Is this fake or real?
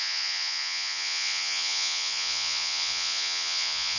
fake